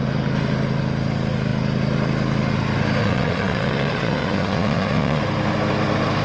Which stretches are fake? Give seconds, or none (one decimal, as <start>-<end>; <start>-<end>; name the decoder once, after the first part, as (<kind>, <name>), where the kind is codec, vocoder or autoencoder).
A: 3.0-5.2 (vocoder, Vocos)